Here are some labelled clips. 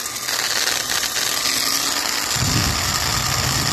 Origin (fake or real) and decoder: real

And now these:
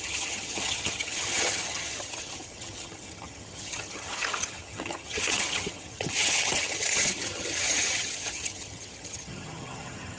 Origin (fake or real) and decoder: fake, vocoder, HiFi-GAN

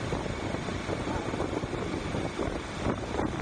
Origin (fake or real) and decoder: real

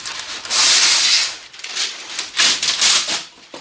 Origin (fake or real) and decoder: real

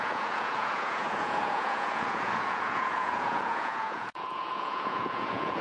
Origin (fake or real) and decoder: fake, vocoder, Vocos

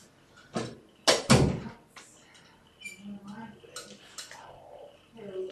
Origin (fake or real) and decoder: real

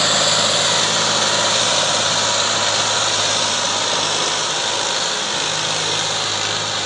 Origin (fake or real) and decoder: real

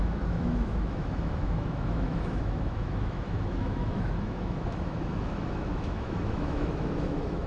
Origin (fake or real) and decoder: fake, autoencoder, DAC-VAE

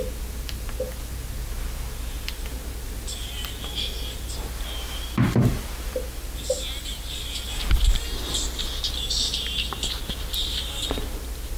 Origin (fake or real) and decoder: real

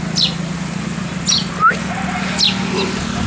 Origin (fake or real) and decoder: real